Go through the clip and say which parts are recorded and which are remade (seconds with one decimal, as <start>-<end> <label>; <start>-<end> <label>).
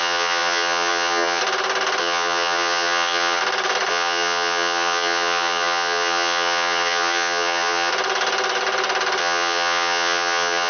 0.0-1.4 remade; 1.4-2.0 recorded; 2.0-3.4 remade; 3.4-3.9 recorded; 3.9-7.9 remade; 7.9-9.2 recorded; 9.2-10.7 remade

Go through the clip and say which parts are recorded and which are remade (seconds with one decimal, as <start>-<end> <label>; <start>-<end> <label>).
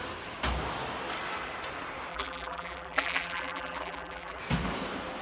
0.0-2.1 recorded; 2.1-4.4 remade; 4.4-5.2 recorded